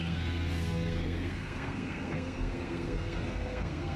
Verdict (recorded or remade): remade